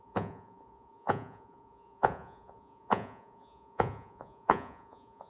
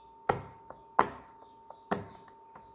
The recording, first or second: second